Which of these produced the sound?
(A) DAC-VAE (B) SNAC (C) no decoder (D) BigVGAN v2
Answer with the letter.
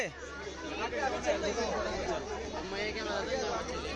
C